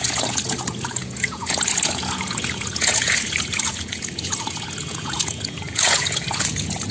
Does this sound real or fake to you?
fake